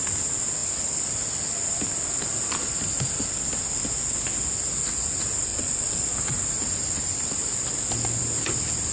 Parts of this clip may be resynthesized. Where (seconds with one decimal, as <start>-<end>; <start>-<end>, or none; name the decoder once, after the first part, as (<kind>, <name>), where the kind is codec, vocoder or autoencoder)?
5.5-6.1 (vocoder, Vocos)

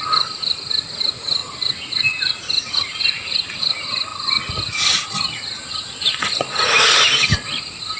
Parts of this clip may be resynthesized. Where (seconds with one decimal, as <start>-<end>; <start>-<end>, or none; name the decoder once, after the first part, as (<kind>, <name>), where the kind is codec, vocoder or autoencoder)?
none